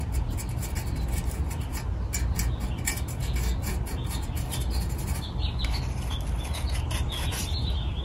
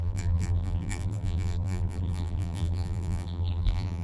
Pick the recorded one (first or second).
first